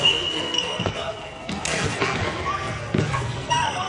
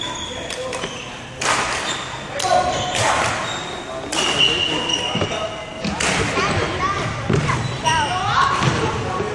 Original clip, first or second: second